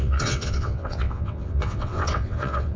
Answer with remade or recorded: remade